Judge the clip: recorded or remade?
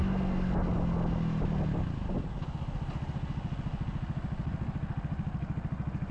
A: recorded